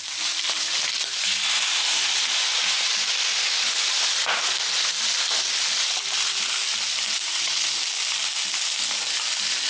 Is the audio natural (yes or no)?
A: yes